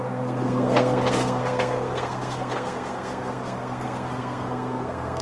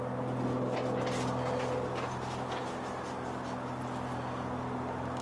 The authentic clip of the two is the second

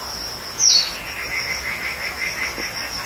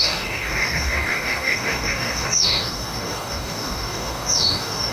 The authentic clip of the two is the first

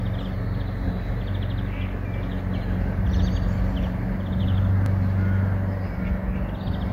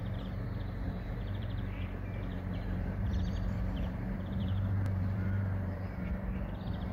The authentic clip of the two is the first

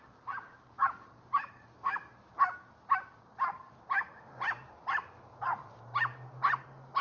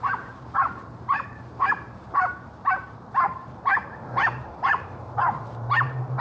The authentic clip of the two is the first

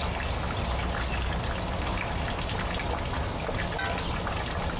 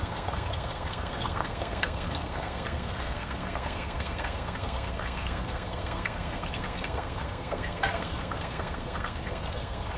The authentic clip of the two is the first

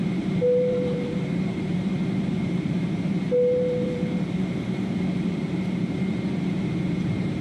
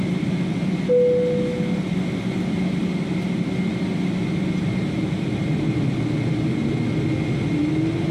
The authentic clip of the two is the second